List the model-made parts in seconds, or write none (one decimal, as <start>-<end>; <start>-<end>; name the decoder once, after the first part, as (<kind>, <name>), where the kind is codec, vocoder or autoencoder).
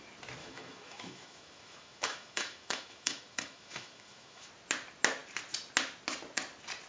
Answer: 0.4-4.5 (autoencoder, DAC-VAE)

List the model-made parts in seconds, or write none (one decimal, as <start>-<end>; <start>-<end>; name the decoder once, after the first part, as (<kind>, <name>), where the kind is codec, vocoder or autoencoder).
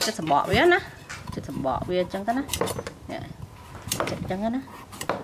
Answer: none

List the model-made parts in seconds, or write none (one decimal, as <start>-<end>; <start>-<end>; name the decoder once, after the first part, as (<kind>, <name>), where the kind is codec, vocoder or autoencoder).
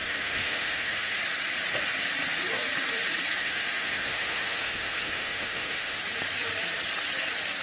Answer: 0.0-1.2 (autoencoder, DAC-VAE); 3.4-6.0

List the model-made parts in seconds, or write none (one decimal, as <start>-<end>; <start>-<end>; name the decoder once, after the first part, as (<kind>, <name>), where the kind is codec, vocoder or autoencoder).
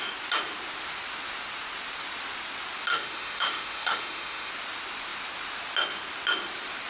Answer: 2.9-4.5 (autoencoder, DAC-VAE)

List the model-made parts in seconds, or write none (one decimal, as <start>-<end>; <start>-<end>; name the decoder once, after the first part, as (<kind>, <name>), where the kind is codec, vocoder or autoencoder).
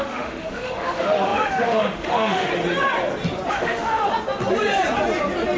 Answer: 0.0-2.5 (autoencoder, DAC-VAE); 3.5-4.1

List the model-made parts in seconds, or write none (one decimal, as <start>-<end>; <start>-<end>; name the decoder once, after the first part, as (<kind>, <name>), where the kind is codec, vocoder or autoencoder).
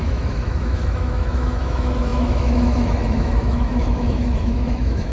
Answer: 0.0-5.1 (autoencoder, DAC-VAE)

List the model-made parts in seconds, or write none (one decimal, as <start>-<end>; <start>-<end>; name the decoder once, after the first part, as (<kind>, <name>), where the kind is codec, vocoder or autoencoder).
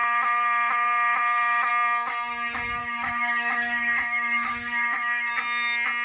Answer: 0.0-1.7 (autoencoder, DAC-VAE); 2.8-5.3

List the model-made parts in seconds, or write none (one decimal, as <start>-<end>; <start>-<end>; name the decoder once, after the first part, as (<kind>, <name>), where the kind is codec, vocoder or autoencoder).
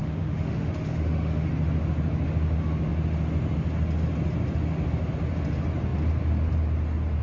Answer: 0.0-1.5 (autoencoder, DAC-VAE)